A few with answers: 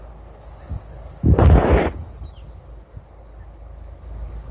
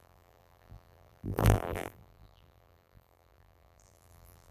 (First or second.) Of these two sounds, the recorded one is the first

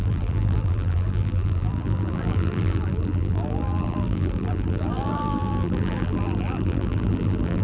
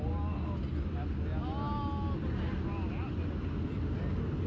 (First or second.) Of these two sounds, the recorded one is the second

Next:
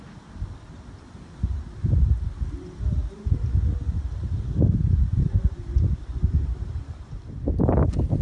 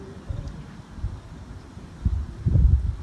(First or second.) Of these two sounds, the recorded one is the first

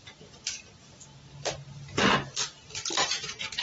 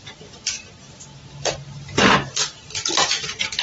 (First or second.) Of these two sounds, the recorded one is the first